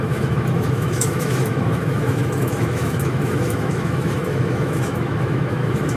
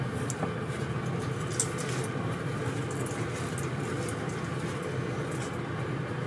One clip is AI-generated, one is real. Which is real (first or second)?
second